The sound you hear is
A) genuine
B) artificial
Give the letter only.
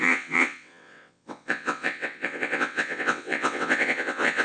B